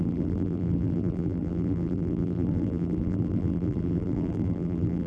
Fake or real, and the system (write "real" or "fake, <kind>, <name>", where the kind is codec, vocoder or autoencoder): fake, vocoder, BigVGAN v2